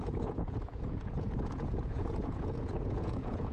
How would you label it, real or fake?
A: fake